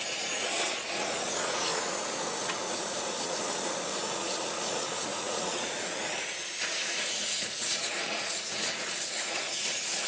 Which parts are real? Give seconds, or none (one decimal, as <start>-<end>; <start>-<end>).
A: none